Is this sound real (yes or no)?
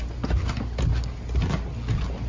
yes